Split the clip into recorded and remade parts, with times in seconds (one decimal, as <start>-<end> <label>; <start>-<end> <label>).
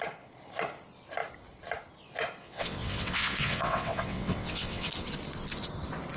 0.0-2.4 recorded; 2.4-4.9 remade; 4.9-6.2 recorded